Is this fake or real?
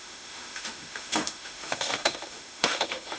fake